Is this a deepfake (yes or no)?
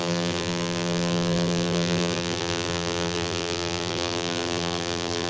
yes